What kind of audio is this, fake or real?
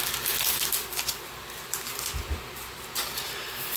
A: real